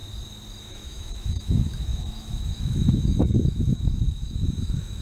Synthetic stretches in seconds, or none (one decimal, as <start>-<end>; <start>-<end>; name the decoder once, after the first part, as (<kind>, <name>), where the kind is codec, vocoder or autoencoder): 0.6-5.0 (autoencoder, DAC-VAE)